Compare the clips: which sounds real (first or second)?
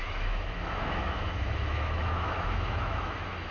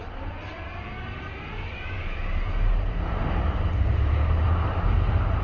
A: second